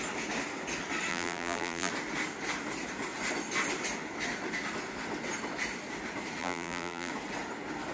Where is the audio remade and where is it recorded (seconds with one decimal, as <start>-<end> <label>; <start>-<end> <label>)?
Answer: 0.0-1.1 recorded; 1.1-1.9 remade; 1.9-6.4 recorded; 6.4-7.1 remade; 7.1-7.9 recorded